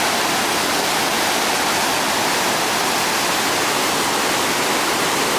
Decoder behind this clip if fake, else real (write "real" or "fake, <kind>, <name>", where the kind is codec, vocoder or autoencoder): real